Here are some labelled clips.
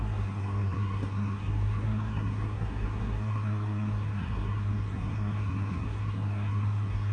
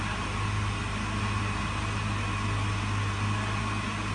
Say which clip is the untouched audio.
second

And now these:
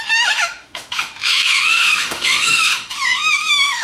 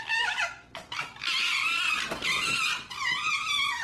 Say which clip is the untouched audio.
second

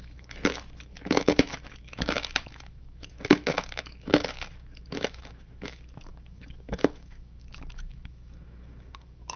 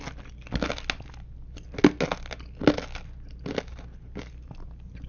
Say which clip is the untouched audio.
second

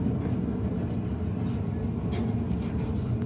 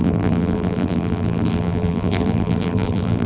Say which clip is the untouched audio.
first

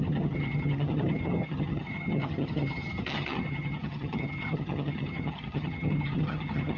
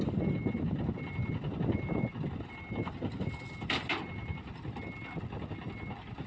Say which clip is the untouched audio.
second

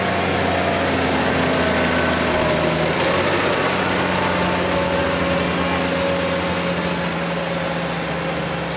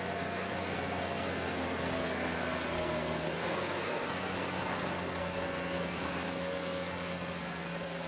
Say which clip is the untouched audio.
first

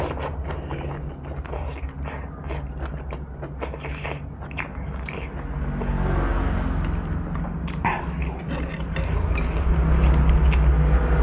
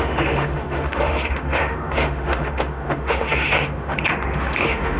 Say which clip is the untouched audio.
first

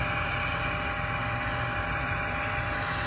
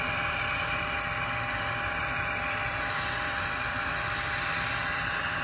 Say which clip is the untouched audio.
first